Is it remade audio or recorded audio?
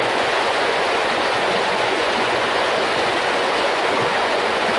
remade